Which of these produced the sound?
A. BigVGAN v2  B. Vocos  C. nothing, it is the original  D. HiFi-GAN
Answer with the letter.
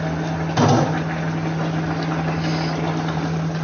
C